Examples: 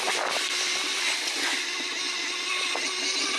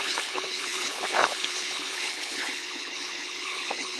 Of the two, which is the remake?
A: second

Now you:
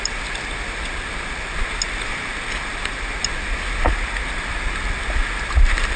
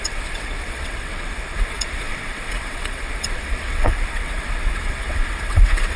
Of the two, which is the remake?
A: second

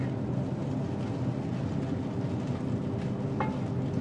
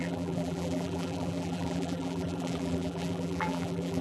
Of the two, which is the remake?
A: second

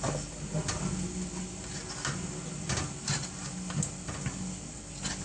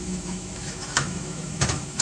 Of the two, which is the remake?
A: second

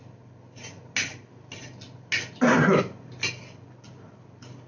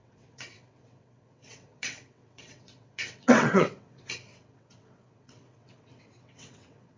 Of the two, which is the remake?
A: second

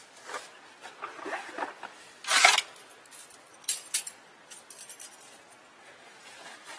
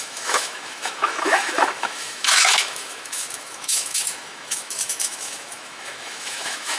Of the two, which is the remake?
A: second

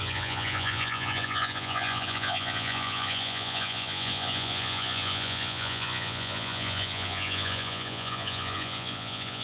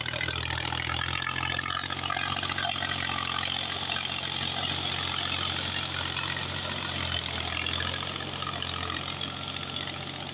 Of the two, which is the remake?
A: first